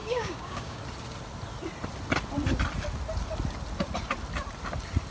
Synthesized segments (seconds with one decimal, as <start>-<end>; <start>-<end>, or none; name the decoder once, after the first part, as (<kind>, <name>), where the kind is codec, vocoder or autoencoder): 0.0-0.8 (codec, DAC)